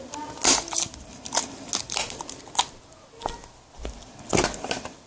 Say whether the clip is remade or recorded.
recorded